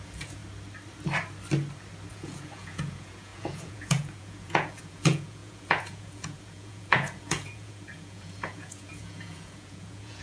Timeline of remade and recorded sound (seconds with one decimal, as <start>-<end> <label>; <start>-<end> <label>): 0.0-0.4 remade; 0.4-2.1 recorded; 2.1-10.2 remade